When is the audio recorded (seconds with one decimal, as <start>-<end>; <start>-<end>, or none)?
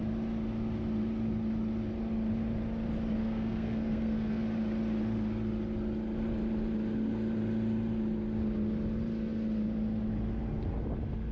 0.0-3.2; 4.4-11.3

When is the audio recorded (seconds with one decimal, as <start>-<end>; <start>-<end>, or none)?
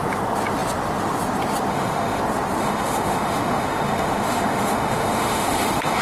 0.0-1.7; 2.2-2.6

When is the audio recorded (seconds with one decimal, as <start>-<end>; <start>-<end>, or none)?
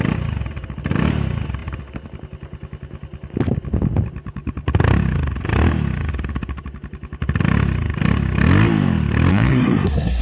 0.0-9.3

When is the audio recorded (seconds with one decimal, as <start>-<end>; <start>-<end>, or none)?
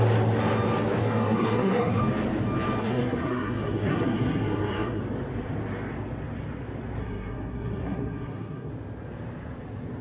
0.0-1.0; 2.0-2.8; 5.0-7.0; 8.7-10.0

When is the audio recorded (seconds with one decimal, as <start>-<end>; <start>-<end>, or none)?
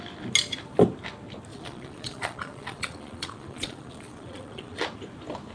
0.0-1.5; 4.8-5.5